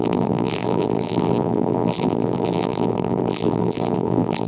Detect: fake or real fake